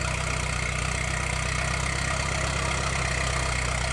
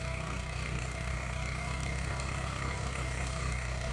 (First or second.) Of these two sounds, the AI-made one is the second